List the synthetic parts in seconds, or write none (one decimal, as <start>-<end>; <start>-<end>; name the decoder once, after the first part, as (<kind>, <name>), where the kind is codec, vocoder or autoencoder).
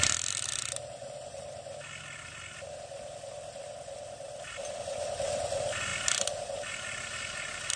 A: none